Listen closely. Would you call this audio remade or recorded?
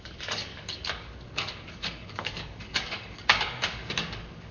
remade